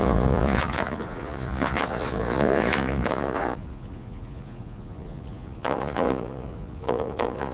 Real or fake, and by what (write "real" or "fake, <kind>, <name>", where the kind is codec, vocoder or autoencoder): fake, vocoder, Vocos